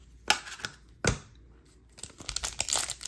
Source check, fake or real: real